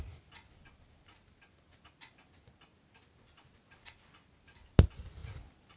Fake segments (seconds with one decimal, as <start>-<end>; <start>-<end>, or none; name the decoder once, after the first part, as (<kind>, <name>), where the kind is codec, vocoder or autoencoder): none